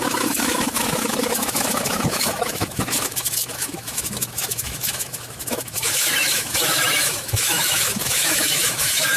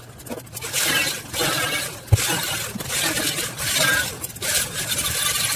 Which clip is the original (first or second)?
second